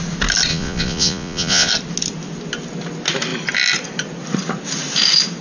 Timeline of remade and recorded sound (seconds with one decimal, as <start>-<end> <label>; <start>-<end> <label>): 0.0-0.5 recorded; 0.5-1.7 remade; 1.7-5.4 recorded